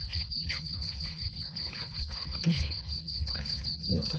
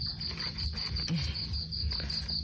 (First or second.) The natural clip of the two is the second